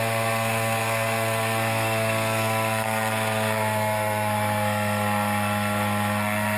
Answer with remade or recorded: remade